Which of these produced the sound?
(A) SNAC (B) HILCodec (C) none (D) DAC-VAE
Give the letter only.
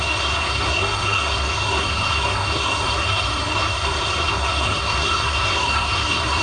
A